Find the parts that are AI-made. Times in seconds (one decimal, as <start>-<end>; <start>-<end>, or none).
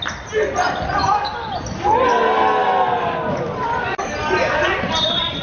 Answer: none